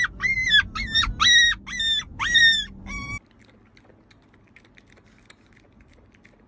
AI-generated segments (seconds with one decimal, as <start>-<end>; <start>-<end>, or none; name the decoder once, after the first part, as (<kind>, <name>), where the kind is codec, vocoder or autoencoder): none